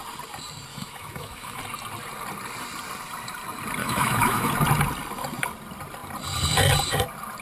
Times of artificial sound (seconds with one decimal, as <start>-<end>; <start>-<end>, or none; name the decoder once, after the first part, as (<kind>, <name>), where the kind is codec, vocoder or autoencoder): 0.7-1.6 (autoencoder, DAC-VAE); 3.8-4.5